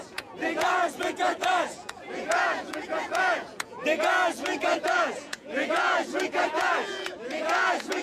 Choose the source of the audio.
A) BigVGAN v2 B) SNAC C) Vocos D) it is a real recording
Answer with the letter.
C